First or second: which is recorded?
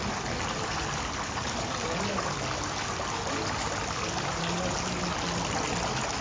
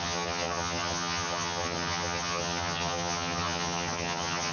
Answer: first